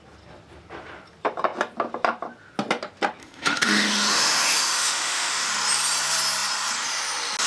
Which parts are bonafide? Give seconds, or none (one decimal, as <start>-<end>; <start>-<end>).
0.0-3.2; 5.5-7.5